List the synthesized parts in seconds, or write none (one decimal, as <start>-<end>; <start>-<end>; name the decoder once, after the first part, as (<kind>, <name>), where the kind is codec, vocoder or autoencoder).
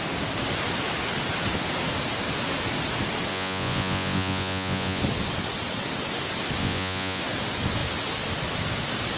3.3-5.0 (vocoder, Vocos); 6.6-7.2